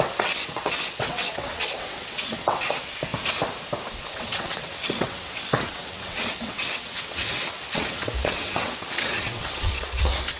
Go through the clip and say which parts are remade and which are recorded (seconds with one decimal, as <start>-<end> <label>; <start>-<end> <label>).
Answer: 0.0-3.1 remade; 3.1-4.1 recorded; 4.1-10.4 remade